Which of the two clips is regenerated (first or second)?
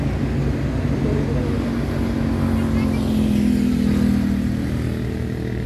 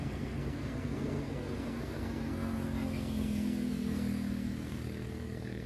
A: second